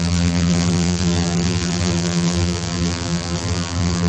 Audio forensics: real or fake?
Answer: fake